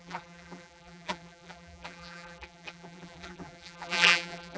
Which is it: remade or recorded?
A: remade